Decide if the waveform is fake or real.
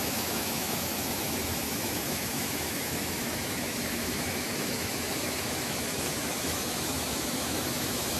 fake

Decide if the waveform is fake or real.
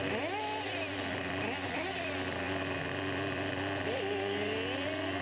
real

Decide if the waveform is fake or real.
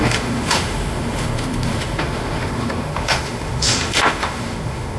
fake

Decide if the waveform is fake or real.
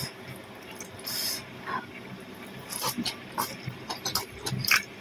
real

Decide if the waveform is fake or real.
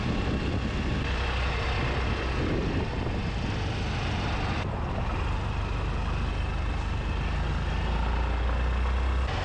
real